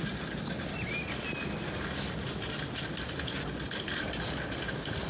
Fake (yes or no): no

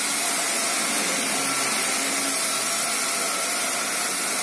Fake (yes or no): no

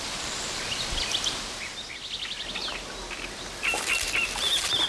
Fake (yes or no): no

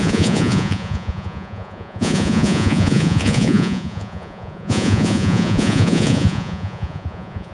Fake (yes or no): yes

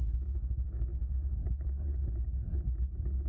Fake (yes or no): yes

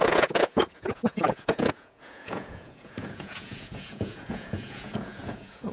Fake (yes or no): yes